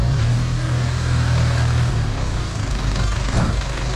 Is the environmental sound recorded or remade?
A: remade